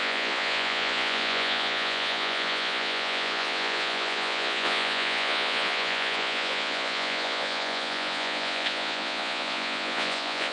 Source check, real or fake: fake